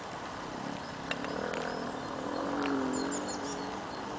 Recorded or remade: recorded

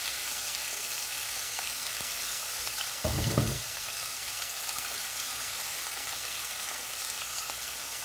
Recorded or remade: remade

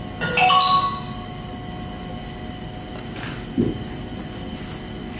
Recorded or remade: recorded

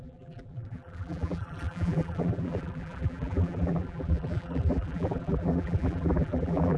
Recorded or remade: remade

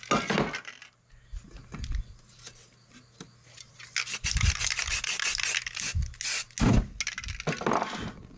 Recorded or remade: recorded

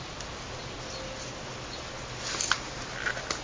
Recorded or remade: recorded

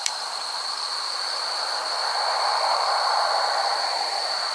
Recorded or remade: remade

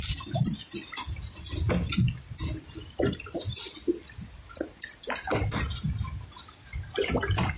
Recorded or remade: recorded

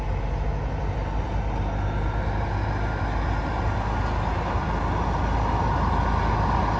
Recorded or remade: recorded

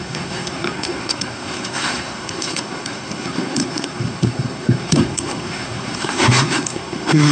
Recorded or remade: remade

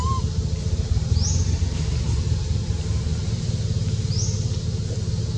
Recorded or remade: recorded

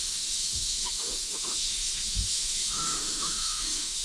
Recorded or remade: remade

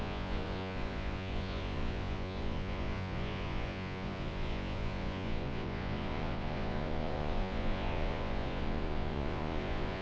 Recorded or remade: remade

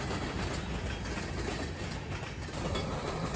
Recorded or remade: recorded